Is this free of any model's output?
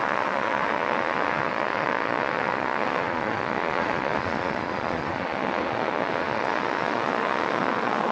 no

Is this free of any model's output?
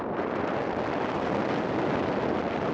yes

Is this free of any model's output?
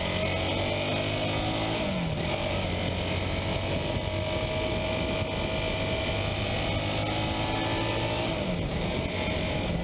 yes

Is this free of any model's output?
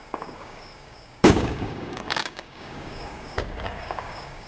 no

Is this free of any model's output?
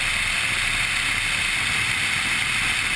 yes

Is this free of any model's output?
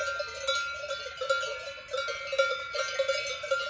yes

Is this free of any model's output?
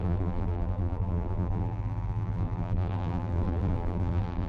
no